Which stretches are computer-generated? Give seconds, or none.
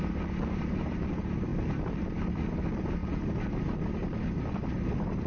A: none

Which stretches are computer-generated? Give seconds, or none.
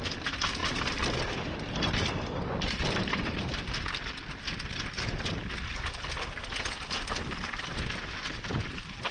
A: 0.6-4.4 (vocoder, BigVGAN v2)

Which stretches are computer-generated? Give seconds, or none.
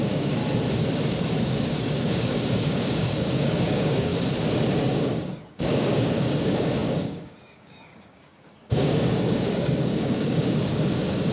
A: 0.0-0.4 (codec, DAC); 1.4-4.1; 4.9-11.3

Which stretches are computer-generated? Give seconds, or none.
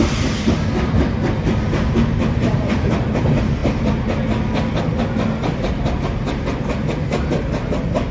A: none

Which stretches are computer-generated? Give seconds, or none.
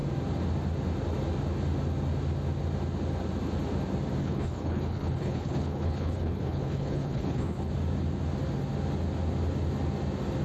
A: 4.2-7.7 (codec, HILCodec)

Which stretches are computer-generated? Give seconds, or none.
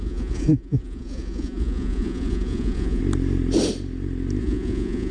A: 0.0-3.0 (vocoder, Vocos); 4.4-5.1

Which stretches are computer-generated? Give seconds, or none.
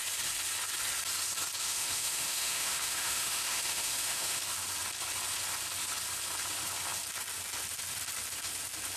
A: 1.6-4.4 (autoencoder, DAC-VAE)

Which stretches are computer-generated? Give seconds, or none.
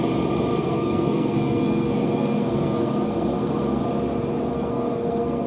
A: 0.5-3.8 (codec, SNAC); 4.5-5.5